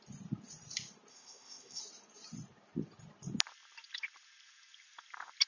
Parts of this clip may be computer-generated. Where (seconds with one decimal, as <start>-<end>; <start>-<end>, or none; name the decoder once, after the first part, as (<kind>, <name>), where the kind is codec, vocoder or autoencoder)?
1.1-1.8 (codec, ZipCodec)